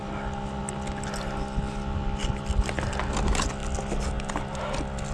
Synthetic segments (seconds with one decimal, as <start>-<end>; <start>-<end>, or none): none